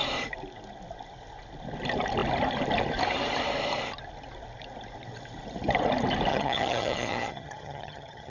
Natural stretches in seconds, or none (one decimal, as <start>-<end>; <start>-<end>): 0.0-6.3